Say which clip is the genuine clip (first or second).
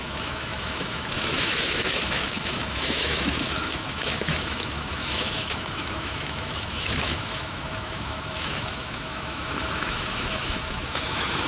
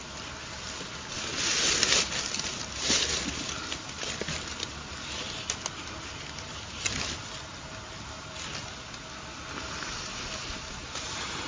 second